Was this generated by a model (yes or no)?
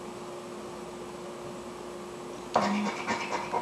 no